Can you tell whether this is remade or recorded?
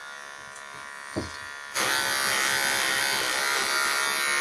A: recorded